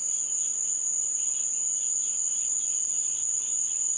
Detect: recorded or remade recorded